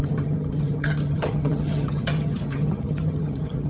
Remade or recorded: remade